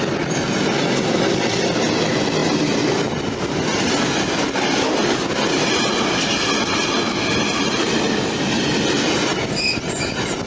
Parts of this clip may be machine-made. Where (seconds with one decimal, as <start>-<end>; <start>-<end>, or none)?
none